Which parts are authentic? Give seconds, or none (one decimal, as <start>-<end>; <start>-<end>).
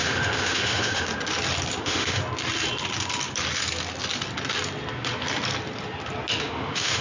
1.1-1.8; 2.2-6.4